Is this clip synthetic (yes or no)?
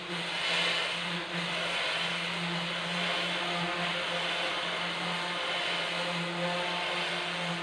no